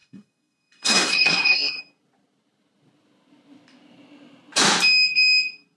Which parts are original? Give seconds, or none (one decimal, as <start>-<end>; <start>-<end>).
1.8-5.8